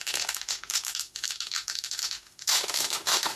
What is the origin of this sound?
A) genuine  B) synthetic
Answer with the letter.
B